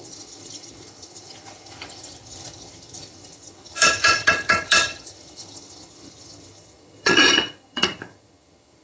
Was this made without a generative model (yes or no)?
no